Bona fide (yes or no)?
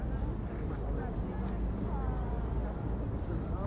yes